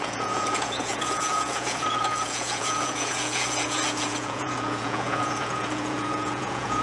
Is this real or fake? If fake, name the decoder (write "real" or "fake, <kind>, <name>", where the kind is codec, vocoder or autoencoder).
fake, vocoder, Vocos